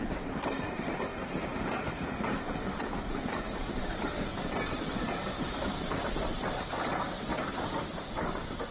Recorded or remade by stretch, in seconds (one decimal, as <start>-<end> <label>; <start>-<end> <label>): 0.0-7.3 remade; 7.3-8.7 recorded

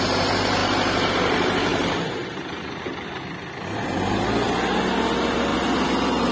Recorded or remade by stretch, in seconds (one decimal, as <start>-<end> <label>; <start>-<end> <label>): 0.0-1.7 recorded; 1.7-2.8 remade; 2.8-6.3 recorded

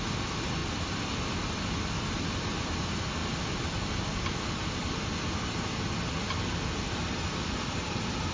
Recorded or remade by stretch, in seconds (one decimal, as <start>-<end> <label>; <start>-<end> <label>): 0.0-8.3 recorded

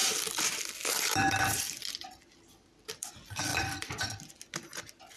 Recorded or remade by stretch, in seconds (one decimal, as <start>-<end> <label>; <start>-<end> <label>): 0.0-3.1 remade; 3.1-3.5 recorded; 3.5-4.3 remade; 4.3-5.2 recorded

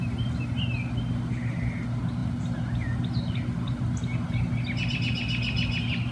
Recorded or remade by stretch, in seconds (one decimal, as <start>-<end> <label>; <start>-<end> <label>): 0.0-6.1 recorded

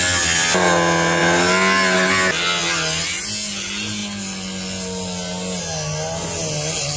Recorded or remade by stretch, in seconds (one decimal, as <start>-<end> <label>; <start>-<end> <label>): 0.0-7.0 recorded